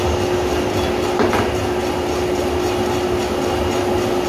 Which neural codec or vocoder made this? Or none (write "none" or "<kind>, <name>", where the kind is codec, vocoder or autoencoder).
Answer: none